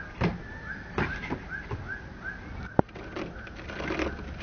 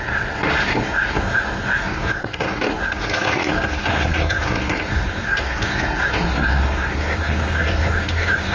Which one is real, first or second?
first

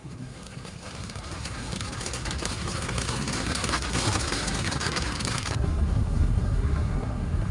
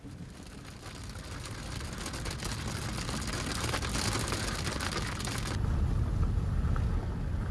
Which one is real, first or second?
second